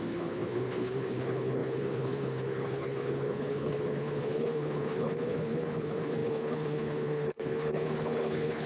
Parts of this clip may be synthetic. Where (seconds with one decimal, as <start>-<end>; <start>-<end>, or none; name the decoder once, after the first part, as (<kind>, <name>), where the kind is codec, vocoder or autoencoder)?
0.0-8.7 (codec, HILCodec)